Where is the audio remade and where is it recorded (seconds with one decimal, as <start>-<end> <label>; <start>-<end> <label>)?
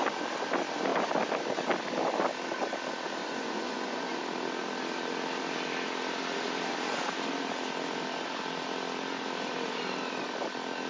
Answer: 0.0-3.2 recorded; 3.2-4.2 remade; 4.2-10.9 recorded